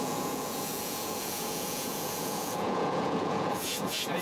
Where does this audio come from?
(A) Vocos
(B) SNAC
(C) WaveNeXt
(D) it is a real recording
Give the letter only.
A